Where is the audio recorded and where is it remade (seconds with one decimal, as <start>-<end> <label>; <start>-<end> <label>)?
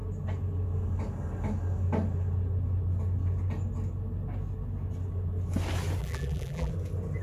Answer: 0.0-6.0 recorded; 6.0-6.7 remade; 6.7-7.2 recorded